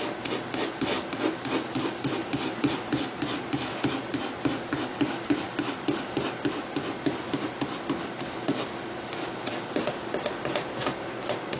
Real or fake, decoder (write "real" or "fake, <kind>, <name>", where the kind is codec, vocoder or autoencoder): real